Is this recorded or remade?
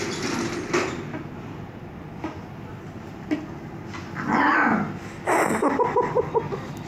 recorded